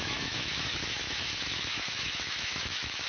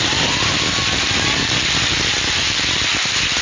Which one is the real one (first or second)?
second